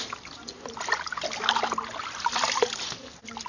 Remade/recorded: recorded